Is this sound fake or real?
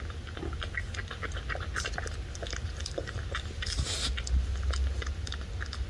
real